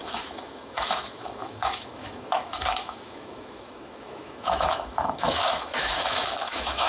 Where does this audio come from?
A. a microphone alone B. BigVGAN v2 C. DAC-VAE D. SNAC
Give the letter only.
C